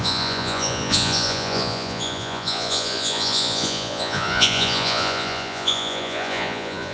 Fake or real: fake